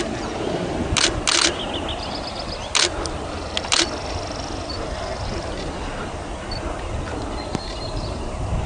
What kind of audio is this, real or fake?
real